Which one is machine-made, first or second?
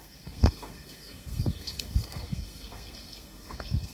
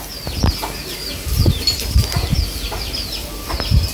first